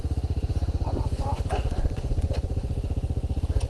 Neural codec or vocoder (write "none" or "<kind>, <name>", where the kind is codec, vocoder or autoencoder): vocoder, Vocos